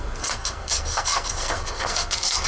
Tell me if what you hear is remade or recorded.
remade